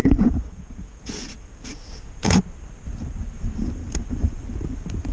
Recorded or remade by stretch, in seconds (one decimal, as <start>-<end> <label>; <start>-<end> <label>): 0.0-2.4 remade; 2.4-5.1 recorded